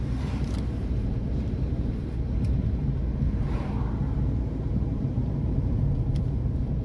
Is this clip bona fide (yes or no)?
no